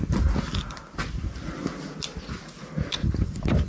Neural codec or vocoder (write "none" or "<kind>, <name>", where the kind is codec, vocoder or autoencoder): none